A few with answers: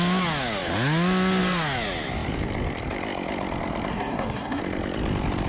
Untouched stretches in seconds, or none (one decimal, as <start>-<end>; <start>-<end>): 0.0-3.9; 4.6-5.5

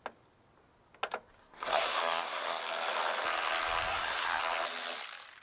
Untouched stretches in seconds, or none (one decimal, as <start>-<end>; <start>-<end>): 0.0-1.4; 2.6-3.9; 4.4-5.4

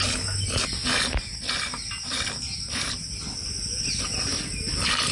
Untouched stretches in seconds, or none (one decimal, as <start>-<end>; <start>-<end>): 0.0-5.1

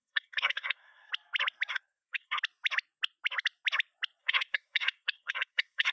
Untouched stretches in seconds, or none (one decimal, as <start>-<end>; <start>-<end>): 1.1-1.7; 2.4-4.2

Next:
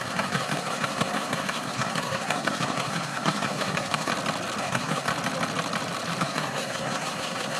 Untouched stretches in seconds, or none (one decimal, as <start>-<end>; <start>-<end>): 4.1-4.6; 5.1-6.2

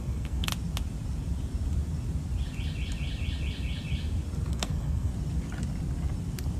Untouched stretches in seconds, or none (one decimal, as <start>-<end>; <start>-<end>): 0.5-4.5; 5.1-6.6

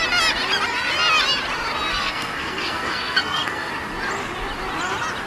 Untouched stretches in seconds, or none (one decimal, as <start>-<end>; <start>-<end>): 0.0-1.9; 3.7-5.3

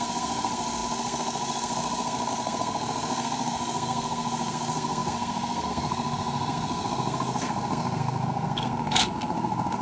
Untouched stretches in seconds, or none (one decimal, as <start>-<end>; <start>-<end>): none